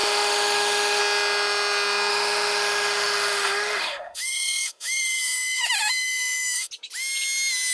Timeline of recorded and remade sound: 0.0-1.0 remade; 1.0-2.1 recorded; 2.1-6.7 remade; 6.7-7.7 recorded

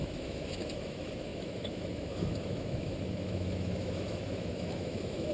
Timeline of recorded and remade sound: 0.0-5.3 remade

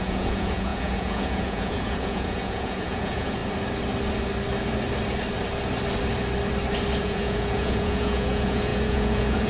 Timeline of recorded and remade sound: 0.0-3.4 remade; 3.4-7.0 recorded; 7.0-9.5 remade

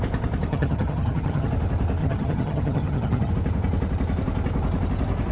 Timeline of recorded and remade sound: 0.0-0.5 recorded; 0.5-1.5 remade; 1.5-2.0 recorded; 2.0-3.3 remade; 3.3-5.3 recorded

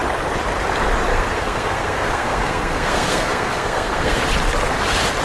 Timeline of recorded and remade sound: 0.0-1.1 recorded; 1.1-4.2 remade; 4.2-5.2 recorded

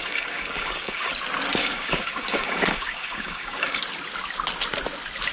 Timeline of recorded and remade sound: 0.0-1.1 remade; 1.1-1.5 recorded; 1.5-3.8 remade; 3.8-5.3 recorded

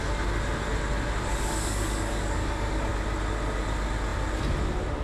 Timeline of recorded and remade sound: 0.0-1.3 recorded; 1.3-2.9 remade; 2.9-5.0 recorded

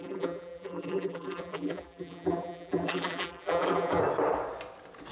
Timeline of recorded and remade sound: 0.0-4.0 remade; 4.0-5.1 recorded